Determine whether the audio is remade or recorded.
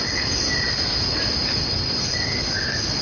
recorded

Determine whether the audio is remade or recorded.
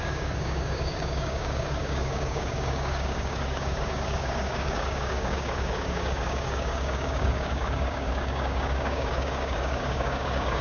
remade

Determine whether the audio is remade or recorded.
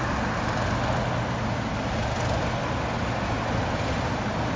recorded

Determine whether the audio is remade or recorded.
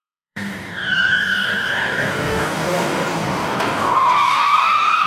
remade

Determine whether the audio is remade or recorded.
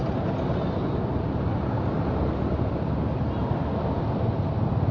recorded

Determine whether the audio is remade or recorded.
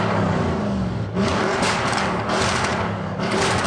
remade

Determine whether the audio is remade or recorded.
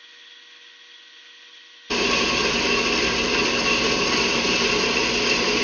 recorded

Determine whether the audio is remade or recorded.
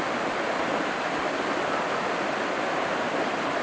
recorded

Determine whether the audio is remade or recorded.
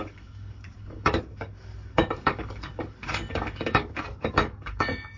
remade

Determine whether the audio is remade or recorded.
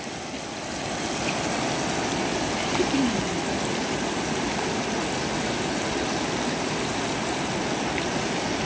recorded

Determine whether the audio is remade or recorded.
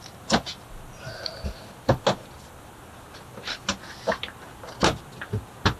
recorded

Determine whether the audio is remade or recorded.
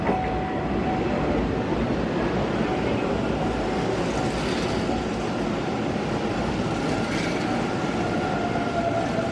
recorded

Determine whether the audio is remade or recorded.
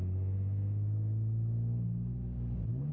recorded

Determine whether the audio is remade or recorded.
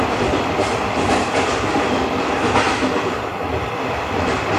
recorded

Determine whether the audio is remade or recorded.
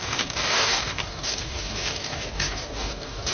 remade